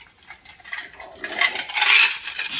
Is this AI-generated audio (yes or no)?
no